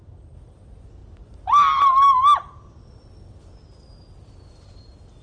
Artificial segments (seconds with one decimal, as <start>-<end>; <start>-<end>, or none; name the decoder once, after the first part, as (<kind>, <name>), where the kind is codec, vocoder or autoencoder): none